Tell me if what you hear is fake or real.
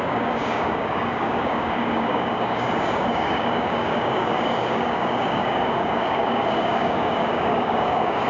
fake